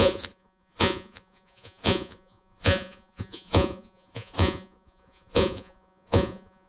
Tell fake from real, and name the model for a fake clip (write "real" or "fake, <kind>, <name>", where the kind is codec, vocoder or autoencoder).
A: fake, vocoder, Vocos